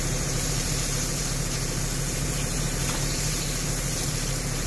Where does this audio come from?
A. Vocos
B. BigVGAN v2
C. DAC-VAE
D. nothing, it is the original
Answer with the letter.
B